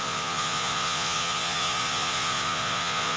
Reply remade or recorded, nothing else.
remade